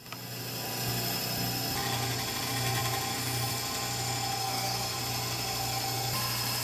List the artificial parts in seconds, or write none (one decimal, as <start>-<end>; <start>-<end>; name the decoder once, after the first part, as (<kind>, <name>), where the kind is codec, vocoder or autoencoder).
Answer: 4.4-5.0 (codec, SNAC)